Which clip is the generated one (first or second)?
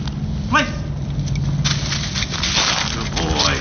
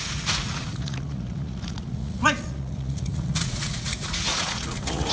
second